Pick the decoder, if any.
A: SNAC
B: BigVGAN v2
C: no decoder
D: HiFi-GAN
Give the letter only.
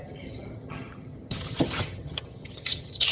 D